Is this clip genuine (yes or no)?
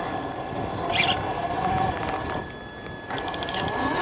yes